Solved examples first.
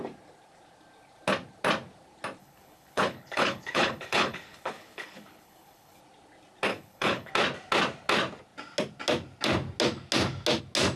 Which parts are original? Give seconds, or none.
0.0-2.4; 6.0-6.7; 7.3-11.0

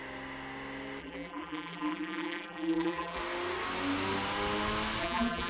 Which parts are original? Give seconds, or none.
0.0-1.0; 3.2-5.0

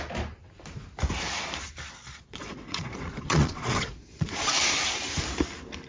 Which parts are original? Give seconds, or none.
0.0-2.0; 4.5-5.9

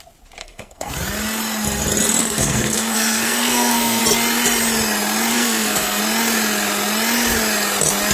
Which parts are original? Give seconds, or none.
0.0-0.4; 0.9-2.2; 4.0-5.3; 6.0-8.1

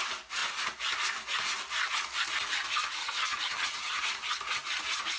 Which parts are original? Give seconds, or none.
0.0-3.0; 4.0-5.2

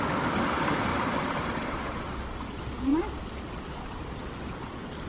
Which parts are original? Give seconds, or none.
0.0-0.9; 1.9-2.9; 4.1-5.1

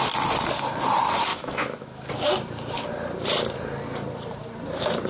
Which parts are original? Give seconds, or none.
0.0-1.3; 2.1-5.1